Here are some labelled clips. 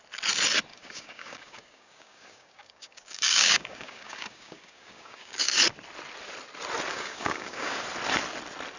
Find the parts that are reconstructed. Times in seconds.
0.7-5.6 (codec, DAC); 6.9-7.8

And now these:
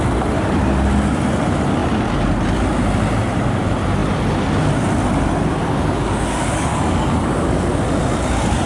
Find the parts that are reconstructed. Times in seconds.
5.6-7.8 (codec, DAC)

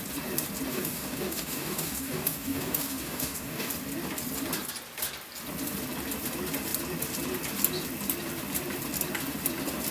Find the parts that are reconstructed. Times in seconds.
0.7-3.7 (codec, DAC)

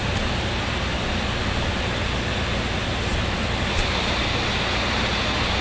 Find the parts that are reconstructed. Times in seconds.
none

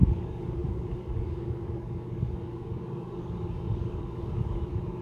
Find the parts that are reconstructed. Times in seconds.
0.0-5.0 (codec, DAC)

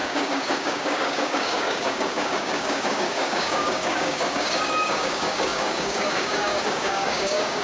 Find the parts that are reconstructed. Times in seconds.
0.0-7.6 (codec, DAC)

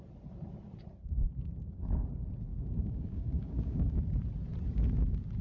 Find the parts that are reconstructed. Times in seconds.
2.5-4.0 (codec, DAC)

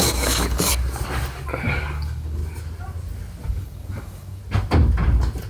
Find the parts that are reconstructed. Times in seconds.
0.0-0.7 (codec, DAC); 1.6-2.4; 3.5-4.4